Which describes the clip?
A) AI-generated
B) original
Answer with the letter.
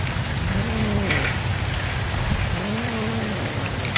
B